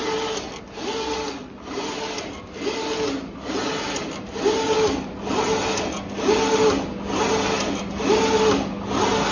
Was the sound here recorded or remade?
recorded